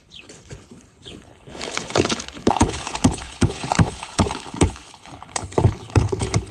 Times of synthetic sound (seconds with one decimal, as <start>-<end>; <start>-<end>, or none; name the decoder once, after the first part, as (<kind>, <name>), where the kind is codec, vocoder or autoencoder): 0.0-6.5 (codec, HILCodec)